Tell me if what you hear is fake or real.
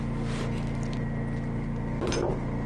real